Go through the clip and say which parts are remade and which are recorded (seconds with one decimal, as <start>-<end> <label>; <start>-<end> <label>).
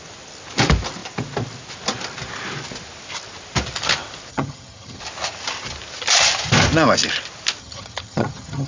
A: 0.0-4.3 recorded; 4.3-5.0 remade; 5.0-7.6 recorded; 7.6-8.7 remade